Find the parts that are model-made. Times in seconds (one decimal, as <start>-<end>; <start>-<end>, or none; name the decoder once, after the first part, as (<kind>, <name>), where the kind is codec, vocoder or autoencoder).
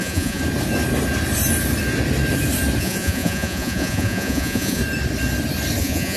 0.0-0.4 (vocoder, Vocos); 2.8-4.8; 5.8-6.2